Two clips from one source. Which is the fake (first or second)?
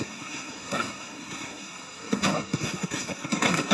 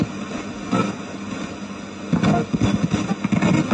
first